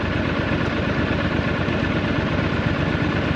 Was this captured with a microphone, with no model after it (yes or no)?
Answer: yes